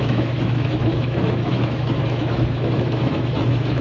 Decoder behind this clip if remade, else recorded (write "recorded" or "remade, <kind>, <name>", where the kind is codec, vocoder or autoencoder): remade, autoencoder, DAC-VAE